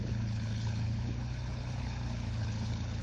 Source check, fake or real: fake